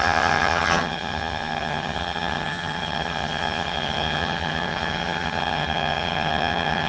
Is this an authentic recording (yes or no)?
no